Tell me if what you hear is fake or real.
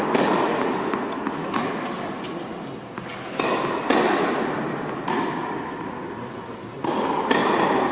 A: real